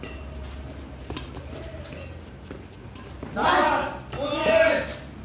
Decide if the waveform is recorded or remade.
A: recorded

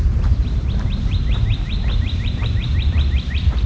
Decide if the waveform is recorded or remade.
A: remade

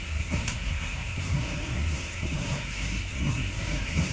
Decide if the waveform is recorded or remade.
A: remade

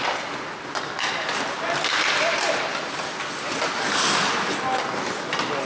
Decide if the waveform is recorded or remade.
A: recorded